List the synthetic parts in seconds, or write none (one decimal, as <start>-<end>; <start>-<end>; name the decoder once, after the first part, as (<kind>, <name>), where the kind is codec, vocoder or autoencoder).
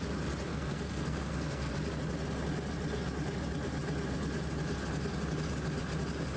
0.5-1.7 (codec, SNAC)